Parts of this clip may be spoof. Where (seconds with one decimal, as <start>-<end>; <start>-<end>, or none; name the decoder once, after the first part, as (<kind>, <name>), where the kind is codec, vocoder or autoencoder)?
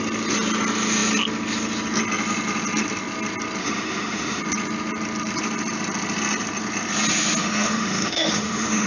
3.6-4.4 (autoencoder, DAC-VAE); 7.4-8.9